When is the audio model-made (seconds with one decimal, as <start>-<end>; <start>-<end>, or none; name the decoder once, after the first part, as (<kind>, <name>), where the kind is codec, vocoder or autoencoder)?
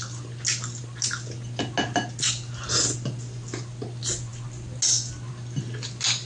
none